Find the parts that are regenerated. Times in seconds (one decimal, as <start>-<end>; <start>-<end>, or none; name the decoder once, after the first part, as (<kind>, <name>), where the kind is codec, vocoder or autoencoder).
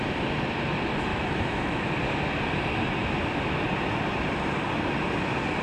1.1-1.9 (autoencoder, DAC-VAE)